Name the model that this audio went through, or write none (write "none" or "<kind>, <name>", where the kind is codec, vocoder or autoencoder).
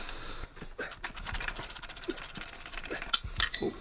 none